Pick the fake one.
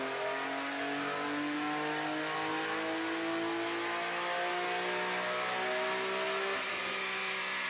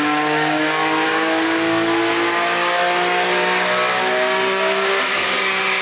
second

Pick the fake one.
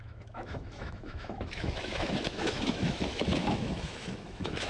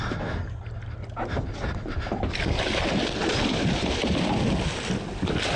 first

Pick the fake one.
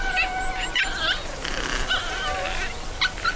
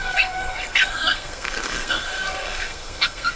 second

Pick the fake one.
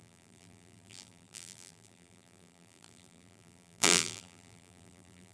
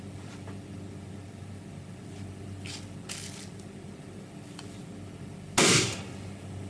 first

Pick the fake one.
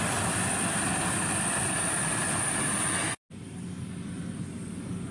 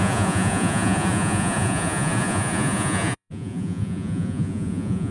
second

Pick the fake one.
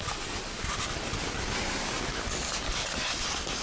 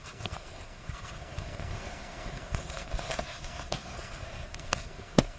second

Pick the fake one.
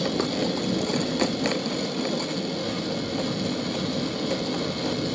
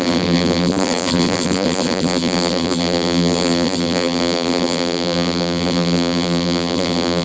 second